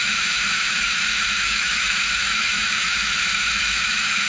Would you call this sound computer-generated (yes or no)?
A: yes